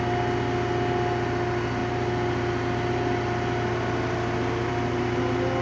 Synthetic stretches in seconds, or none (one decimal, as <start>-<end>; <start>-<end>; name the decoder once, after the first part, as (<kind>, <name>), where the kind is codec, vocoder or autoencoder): none